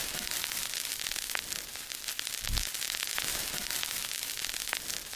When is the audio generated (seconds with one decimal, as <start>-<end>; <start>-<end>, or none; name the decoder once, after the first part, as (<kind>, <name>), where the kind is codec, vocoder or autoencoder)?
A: none